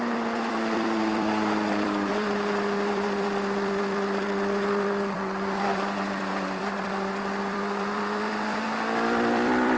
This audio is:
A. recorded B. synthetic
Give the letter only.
B